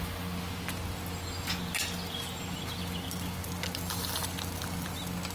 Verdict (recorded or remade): recorded